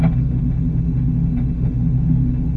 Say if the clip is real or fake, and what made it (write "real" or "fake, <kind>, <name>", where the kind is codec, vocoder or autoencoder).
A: fake, autoencoder, DAC-VAE